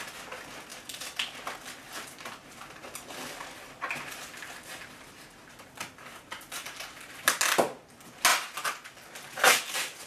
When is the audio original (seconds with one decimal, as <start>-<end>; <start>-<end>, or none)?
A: 0.0-10.1